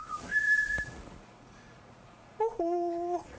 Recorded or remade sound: remade